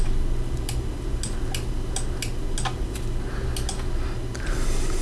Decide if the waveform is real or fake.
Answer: real